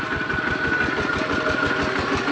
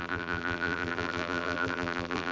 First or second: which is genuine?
first